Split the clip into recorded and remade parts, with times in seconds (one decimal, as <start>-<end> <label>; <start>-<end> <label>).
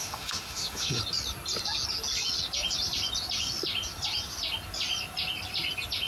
0.0-1.0 remade; 1.0-6.1 recorded